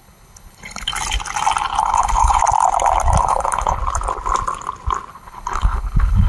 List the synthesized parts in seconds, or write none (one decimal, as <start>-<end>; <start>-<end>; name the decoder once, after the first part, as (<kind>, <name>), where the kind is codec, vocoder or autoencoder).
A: 0.0-0.9 (codec, HILCodec); 1.8-2.4; 3.2-3.8; 5.1-6.3